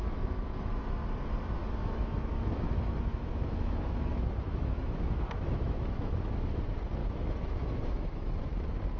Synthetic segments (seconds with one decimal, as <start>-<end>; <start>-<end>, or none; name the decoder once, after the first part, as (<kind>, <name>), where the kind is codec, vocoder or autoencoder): 0.0-0.7 (autoencoder, DAC-VAE); 1.6-6.6; 7.0-8.3